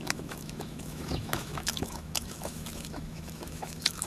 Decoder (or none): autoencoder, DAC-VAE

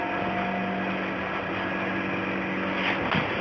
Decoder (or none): none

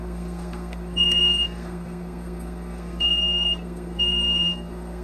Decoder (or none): codec, SNAC